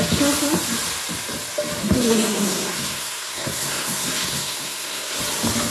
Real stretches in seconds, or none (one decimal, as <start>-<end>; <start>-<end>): 0.0-1.8; 5.2-5.7